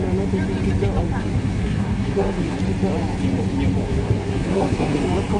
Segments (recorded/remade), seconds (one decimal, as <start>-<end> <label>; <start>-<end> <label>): 0.0-1.2 recorded; 1.2-2.6 remade; 2.6-3.8 recorded; 3.8-5.0 remade; 5.0-5.4 recorded